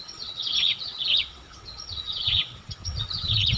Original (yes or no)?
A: no